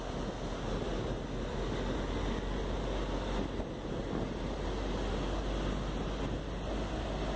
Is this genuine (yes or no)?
yes